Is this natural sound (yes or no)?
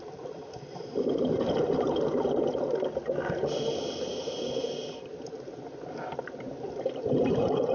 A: yes